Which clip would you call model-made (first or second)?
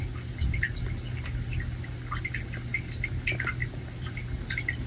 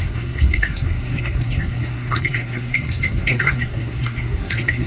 second